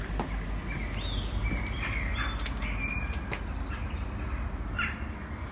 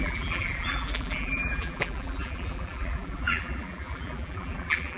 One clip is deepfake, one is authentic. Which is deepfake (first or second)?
second